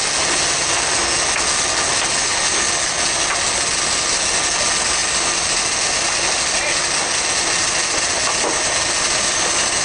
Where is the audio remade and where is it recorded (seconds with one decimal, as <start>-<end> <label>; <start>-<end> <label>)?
0.0-9.8 recorded